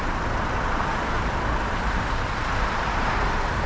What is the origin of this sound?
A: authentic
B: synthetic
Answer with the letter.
B